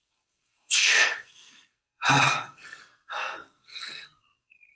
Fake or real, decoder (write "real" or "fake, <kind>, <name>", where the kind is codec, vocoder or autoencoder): fake, codec, SNAC